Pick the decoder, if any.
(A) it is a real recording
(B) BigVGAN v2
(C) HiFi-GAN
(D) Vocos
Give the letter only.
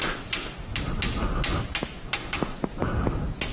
A